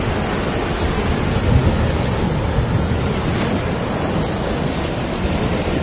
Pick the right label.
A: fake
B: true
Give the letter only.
B